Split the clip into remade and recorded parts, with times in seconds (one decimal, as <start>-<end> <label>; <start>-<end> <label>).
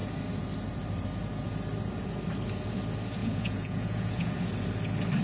0.0-3.2 recorded; 3.2-4.3 remade; 4.3-5.2 recorded